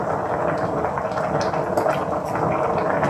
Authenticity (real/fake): real